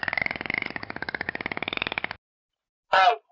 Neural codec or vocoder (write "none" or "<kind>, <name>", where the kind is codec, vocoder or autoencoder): none